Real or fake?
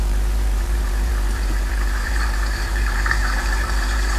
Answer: fake